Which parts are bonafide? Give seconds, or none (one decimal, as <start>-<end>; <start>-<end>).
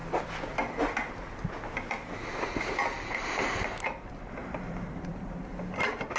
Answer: 0.0-4.4; 5.4-6.2